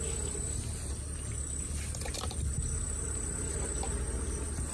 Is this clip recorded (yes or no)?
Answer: yes